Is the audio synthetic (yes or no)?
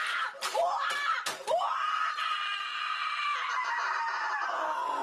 no